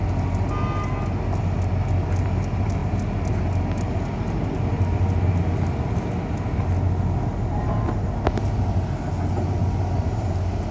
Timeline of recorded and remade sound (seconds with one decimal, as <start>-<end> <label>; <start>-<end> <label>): 0.0-10.7 recorded